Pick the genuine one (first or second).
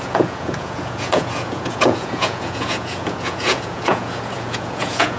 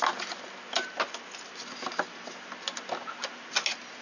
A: second